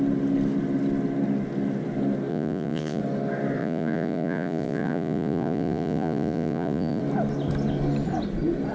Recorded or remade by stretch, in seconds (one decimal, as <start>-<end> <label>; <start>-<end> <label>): 0.0-2.3 recorded; 2.3-3.0 remade; 3.0-3.6 recorded; 3.6-7.0 remade; 7.0-8.7 recorded